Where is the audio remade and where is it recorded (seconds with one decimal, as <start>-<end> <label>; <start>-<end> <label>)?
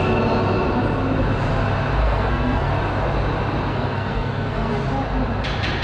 0.0-2.0 recorded; 2.0-2.7 remade; 2.7-3.7 recorded; 3.7-4.7 remade; 4.7-5.8 recorded